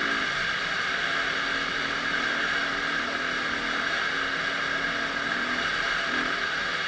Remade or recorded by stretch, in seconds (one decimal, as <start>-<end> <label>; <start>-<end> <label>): 0.0-6.9 recorded